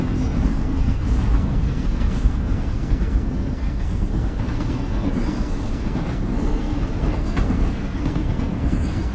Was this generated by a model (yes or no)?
yes